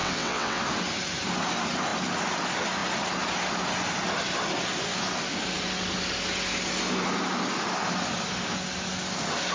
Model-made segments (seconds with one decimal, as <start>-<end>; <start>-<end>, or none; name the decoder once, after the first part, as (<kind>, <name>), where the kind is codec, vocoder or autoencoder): 0.0-0.6 (vocoder, WaveNeXt)